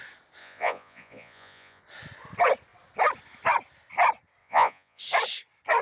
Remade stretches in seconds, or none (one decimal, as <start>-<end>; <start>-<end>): 0.4-1.8; 4.4-5.0